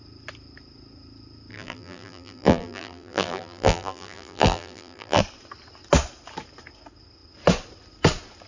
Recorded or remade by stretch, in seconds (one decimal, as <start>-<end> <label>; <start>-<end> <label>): 0.0-1.5 recorded; 1.5-5.2 remade; 5.2-8.5 recorded